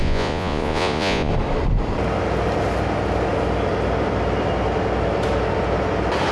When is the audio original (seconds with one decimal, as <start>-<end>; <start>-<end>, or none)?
1.3-6.3